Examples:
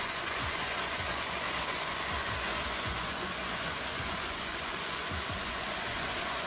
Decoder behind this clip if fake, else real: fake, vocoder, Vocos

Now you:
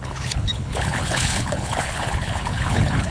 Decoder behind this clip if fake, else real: fake, codec, HILCodec